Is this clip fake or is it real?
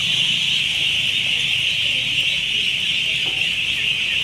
real